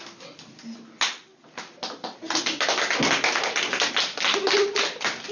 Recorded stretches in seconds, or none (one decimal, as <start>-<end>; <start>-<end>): 0.0-5.3